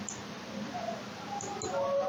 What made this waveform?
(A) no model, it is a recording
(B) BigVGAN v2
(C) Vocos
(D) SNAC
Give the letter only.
A